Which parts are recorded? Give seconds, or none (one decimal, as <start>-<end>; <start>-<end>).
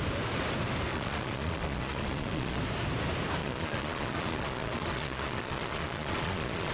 0.0-0.9; 2.6-3.4